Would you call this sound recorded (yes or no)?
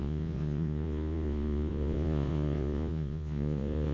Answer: no